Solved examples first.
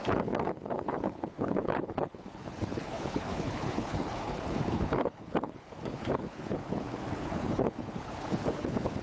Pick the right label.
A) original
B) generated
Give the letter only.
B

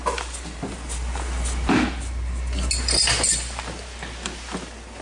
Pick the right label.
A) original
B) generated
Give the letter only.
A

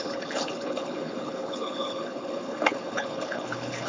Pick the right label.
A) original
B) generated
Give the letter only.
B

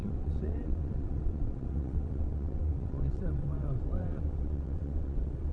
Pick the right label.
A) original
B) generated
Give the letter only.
B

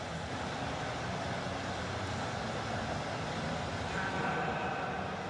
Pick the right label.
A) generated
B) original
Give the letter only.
B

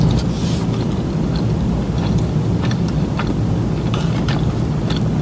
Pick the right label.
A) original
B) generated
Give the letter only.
A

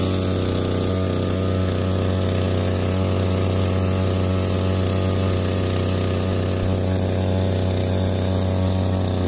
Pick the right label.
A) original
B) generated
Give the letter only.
A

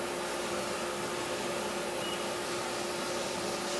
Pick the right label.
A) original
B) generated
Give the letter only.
A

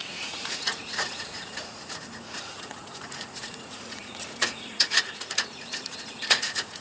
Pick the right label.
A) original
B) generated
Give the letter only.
B